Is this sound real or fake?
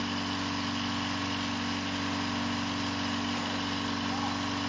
real